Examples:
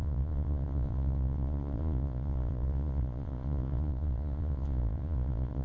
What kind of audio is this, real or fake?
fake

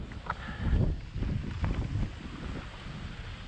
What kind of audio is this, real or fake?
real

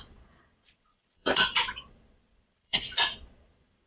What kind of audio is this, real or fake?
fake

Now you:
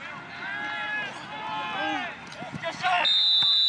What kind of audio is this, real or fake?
real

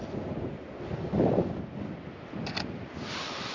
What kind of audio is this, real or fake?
real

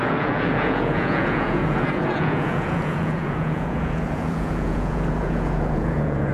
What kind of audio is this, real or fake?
fake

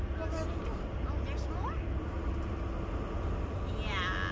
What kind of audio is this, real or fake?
real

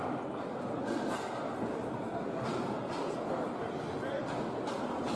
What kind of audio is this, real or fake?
real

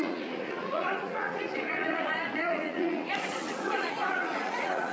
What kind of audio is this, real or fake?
fake